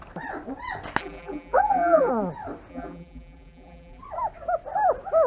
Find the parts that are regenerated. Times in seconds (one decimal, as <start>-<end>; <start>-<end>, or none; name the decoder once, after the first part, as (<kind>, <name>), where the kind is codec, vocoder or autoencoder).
1.0-2.1 (vocoder, BigVGAN v2); 2.7-4.0

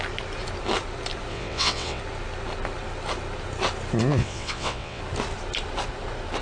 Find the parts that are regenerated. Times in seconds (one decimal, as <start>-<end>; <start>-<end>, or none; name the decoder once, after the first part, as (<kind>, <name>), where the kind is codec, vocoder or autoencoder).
1.3-2.0 (vocoder, WaveNeXt); 4.2-5.0

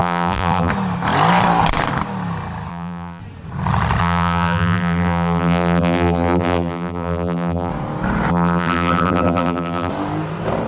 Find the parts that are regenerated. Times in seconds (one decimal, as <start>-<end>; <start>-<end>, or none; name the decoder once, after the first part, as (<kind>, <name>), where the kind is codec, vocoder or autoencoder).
0.0-0.7 (vocoder, BigVGAN v2); 2.7-3.2; 4.0-7.7; 8.3-9.9

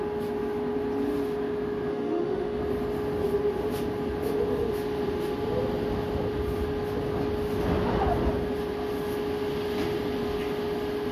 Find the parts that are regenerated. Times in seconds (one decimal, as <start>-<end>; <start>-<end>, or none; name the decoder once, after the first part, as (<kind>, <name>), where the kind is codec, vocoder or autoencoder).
1.9-2.6 (autoencoder, DAC-VAE)